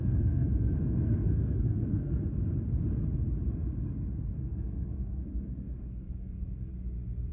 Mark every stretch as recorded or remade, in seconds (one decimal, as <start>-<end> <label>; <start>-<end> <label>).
0.0-2.1 remade; 2.1-4.2 recorded; 4.2-6.7 remade; 6.7-7.3 recorded